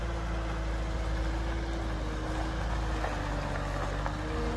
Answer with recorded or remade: recorded